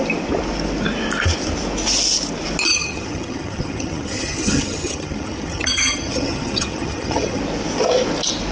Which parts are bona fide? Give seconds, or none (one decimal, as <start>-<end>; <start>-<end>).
0.0-2.7; 7.4-8.5